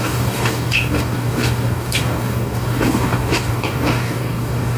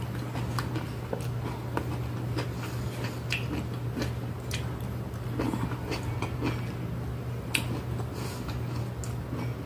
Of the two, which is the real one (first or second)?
second